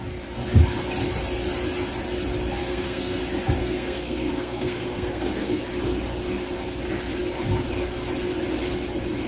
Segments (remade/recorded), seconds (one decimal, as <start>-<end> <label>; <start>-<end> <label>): 0.0-2.6 recorded; 2.6-3.2 remade; 3.2-3.6 recorded; 3.6-5.6 remade; 5.6-9.3 recorded